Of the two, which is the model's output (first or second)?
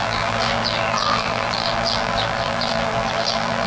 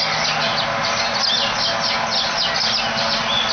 first